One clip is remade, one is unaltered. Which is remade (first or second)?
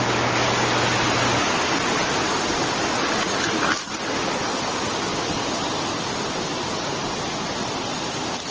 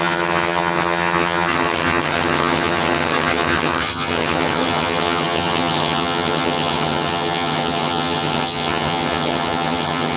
second